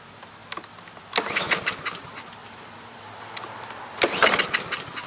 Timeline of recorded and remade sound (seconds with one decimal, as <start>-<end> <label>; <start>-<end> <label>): 0.0-2.4 recorded; 2.4-5.1 remade